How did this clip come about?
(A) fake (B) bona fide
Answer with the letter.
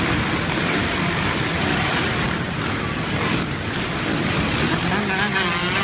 B